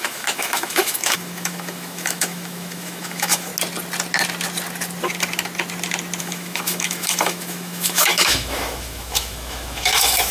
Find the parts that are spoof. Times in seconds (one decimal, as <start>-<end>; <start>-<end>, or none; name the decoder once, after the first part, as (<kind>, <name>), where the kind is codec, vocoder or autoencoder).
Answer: 0.0-3.5 (autoencoder, DAC-VAE); 6.2-10.3

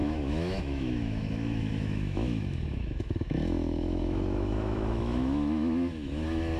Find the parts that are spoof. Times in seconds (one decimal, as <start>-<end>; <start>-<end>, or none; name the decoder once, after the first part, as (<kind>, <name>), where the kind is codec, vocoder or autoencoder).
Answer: 0.0-6.6 (autoencoder, DAC-VAE)

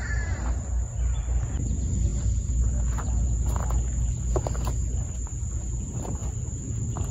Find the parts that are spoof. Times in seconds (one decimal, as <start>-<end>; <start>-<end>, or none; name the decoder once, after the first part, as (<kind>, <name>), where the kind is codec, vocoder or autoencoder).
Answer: none

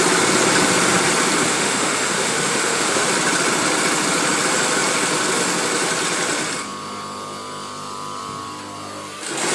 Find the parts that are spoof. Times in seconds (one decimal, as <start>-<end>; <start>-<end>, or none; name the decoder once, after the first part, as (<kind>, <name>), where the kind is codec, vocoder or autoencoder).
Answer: 1.5-3.1 (autoencoder, DAC-VAE)

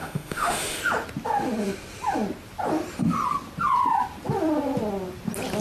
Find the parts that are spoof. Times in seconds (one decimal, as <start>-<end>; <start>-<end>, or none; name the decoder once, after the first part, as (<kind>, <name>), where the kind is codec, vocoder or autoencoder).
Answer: 0.0-0.8 (autoencoder, DAC-VAE)

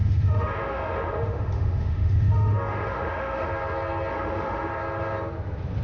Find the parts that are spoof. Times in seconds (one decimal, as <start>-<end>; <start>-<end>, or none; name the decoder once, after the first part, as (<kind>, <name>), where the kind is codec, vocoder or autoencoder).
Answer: 0.0-3.5 (autoencoder, DAC-VAE); 4.1-4.7

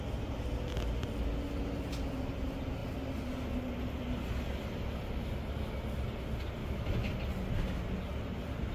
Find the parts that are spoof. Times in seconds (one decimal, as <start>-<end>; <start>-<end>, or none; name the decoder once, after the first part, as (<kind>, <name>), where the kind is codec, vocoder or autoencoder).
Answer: 6.6-7.1 (autoencoder, DAC-VAE)